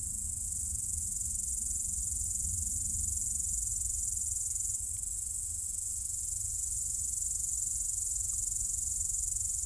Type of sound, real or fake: fake